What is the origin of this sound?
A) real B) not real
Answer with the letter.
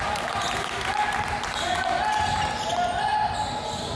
A